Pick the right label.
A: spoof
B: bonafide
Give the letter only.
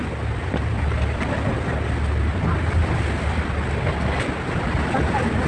B